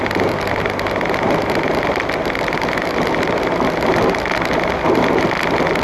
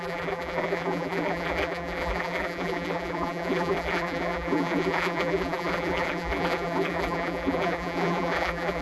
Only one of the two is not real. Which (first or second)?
second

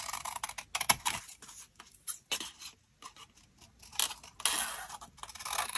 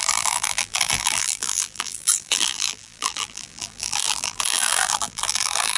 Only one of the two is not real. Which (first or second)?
second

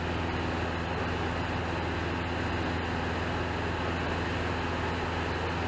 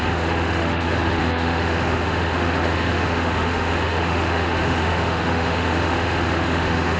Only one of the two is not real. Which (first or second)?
second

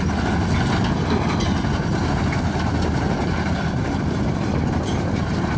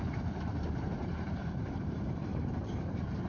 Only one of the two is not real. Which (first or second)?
second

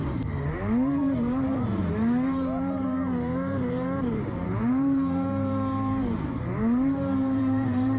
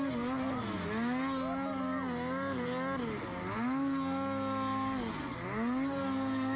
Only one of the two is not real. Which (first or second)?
first